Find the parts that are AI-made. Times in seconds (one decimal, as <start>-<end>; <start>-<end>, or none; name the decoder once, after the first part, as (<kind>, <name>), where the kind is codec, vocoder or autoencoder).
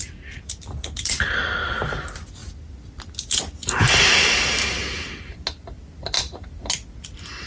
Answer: none